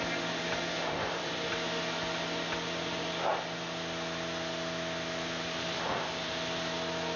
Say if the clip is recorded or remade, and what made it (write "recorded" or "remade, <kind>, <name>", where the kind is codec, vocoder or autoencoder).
recorded